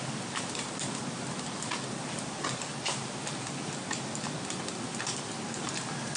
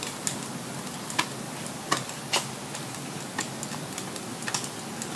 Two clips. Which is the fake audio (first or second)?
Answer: first